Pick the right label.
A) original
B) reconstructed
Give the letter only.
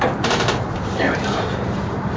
B